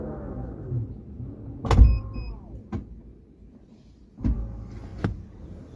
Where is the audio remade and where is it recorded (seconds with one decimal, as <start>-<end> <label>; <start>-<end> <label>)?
0.0-5.8 recorded